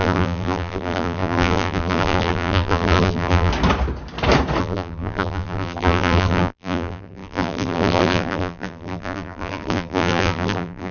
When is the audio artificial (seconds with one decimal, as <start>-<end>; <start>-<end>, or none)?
0.0-3.5; 4.6-10.9